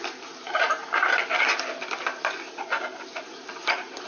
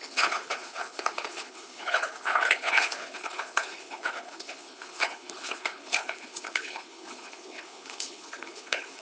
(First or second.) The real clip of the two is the first